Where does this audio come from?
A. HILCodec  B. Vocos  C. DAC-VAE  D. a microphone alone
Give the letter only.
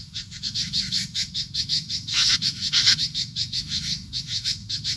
C